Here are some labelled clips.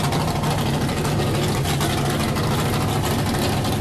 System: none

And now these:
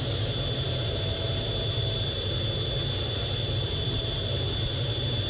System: none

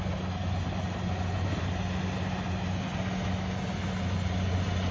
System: none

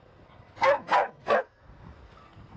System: codec, SNAC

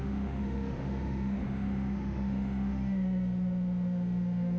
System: autoencoder, DAC-VAE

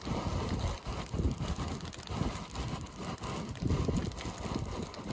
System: none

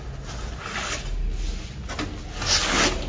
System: none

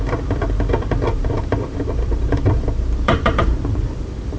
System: vocoder, BigVGAN v2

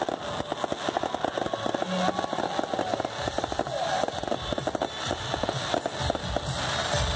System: none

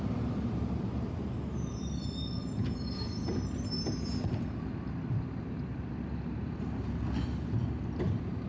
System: none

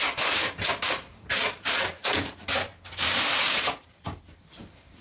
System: vocoder, BigVGAN v2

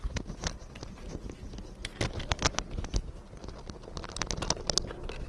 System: none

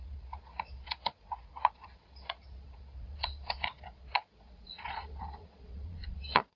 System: vocoder, Vocos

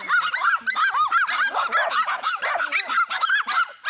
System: none